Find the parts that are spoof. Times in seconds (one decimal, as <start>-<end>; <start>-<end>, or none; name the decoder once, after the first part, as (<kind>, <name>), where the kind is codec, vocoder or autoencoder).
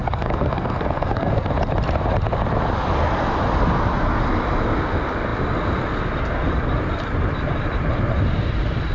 0.0-1.5 (codec, SNAC)